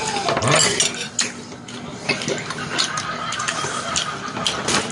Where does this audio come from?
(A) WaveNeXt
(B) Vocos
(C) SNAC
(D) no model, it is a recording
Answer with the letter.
D